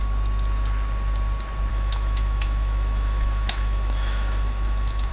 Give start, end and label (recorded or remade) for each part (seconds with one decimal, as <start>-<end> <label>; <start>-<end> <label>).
0.0-1.7 recorded; 1.7-5.1 remade